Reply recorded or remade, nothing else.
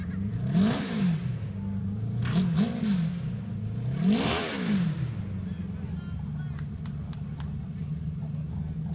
recorded